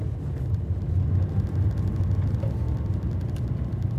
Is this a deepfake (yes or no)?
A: no